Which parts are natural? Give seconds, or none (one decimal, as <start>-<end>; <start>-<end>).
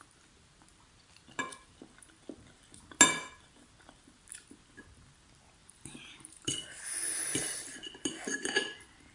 0.0-5.6; 6.5-7.1; 7.8-9.1